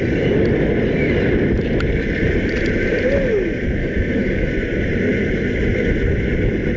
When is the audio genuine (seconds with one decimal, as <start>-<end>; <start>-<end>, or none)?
0.0-3.8; 4.5-6.8